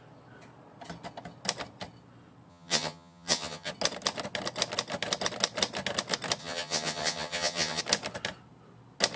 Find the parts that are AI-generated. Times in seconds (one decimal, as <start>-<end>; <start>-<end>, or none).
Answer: 2.5-3.7; 6.4-7.8